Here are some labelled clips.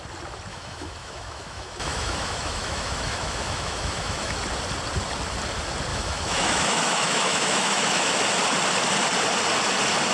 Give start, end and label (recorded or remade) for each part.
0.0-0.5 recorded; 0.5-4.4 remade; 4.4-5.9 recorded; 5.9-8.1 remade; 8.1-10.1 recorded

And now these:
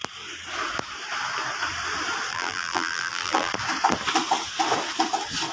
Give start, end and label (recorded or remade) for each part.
0.0-2.3 recorded; 2.3-3.5 remade; 3.5-5.5 recorded

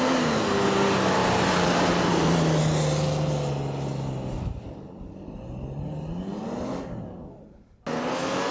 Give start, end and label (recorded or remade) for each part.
0.0-1.2 recorded; 1.2-2.6 remade; 2.6-8.5 recorded

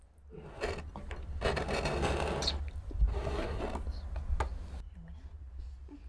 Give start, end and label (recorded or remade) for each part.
0.0-3.1 recorded; 3.1-3.6 remade; 3.6-6.1 recorded

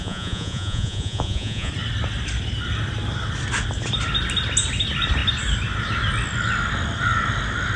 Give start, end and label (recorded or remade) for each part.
0.0-1.7 remade; 1.7-7.8 recorded

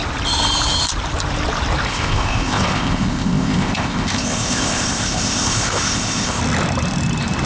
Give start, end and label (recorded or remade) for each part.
0.0-1.9 recorded; 1.9-6.4 remade; 6.4-7.5 recorded